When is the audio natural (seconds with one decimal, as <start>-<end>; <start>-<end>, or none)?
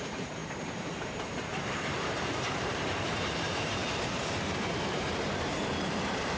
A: none